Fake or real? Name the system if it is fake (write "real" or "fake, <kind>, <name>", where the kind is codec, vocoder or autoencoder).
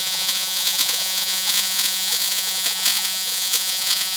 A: fake, vocoder, Vocos